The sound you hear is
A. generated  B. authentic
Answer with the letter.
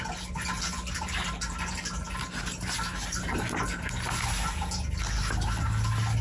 B